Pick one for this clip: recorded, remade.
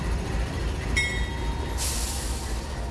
recorded